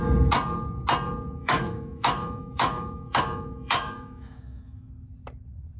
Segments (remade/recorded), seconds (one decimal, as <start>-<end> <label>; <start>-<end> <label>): 0.0-1.4 recorded; 1.4-4.9 remade; 4.9-5.8 recorded